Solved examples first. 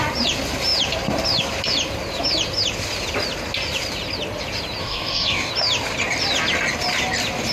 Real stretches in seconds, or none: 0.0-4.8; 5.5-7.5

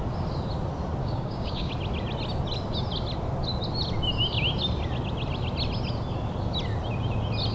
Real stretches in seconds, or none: 0.0-1.0; 1.7-7.5

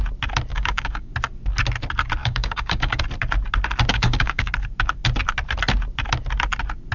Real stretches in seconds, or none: 0.0-0.5; 1.1-2.2; 3.0-3.9; 4.5-6.9

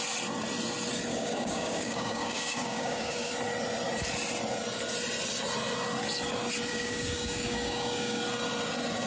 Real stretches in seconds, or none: 0.0-1.1; 3.3-6.7; 8.2-9.1